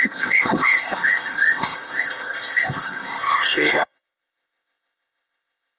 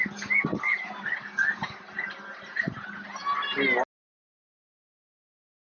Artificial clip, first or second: first